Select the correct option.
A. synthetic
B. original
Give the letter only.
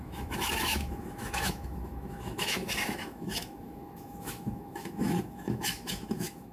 A